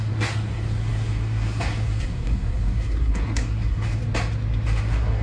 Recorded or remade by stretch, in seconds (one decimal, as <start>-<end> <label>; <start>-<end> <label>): 0.0-4.0 remade; 4.0-4.8 recorded; 4.8-5.2 remade